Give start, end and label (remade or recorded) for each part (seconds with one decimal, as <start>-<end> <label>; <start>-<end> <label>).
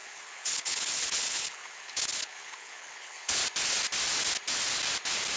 0.0-3.4 remade; 3.4-5.4 recorded